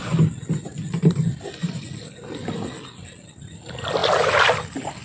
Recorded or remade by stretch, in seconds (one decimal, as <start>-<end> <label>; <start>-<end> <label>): 0.0-5.0 recorded